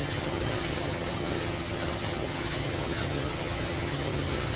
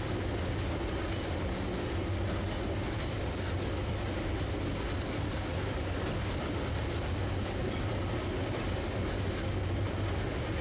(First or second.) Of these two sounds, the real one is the second